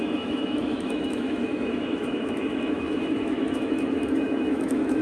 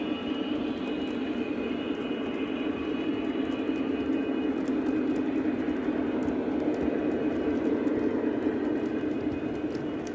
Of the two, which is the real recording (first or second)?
second